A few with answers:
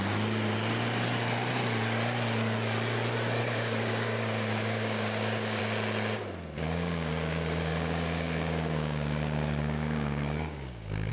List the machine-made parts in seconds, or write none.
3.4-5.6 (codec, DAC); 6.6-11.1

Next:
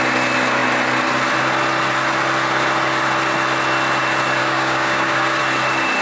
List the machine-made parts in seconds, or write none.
4.4-5.4 (codec, DAC)

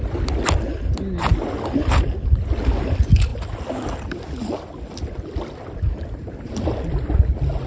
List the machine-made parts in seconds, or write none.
none

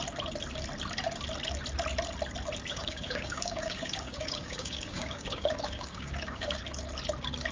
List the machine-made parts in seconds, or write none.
2.7-6.6 (codec, DAC)